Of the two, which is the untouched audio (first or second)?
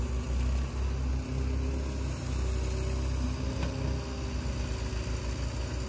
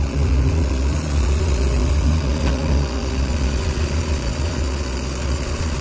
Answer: first